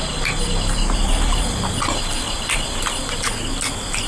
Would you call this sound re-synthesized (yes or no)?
no